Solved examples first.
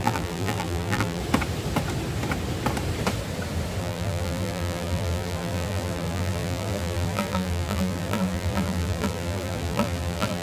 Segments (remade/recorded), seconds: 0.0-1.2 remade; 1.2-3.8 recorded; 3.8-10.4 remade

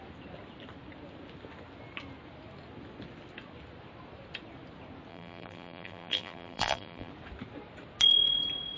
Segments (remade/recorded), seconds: 0.0-5.1 recorded; 5.1-7.1 remade; 7.1-8.8 recorded

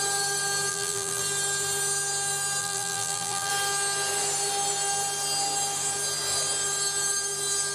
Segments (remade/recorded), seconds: 0.0-0.7 recorded; 0.7-1.2 remade; 1.2-2.6 recorded; 2.6-3.5 remade; 3.5-7.7 recorded

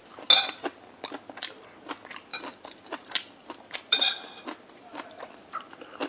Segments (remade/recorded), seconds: 0.0-2.3 recorded; 2.3-5.2 remade; 5.2-6.1 recorded

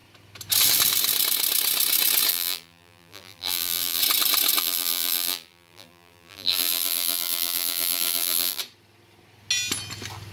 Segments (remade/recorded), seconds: 0.0-2.3 recorded; 2.3-4.0 remade; 4.0-4.6 recorded; 4.6-8.6 remade; 8.6-10.3 recorded

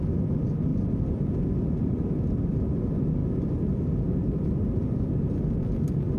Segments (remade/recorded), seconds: 0.0-0.7 recorded; 0.7-1.3 remade; 1.3-3.2 recorded; 3.2-4.4 remade; 4.4-6.2 recorded

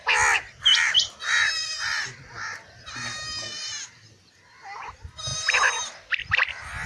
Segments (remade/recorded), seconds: 0.0-0.7 recorded; 0.7-4.8 remade; 4.8-6.9 recorded